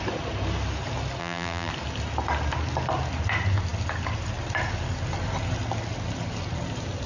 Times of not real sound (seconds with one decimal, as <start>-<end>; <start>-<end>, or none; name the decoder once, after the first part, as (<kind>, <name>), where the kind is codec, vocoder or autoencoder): 1.2-1.7 (vocoder, BigVGAN v2)